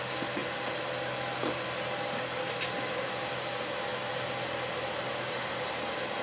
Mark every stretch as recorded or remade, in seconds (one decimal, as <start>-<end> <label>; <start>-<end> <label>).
0.0-6.2 recorded